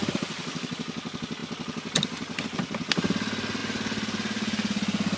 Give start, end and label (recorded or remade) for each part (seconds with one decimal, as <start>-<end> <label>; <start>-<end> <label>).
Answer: 0.0-5.2 recorded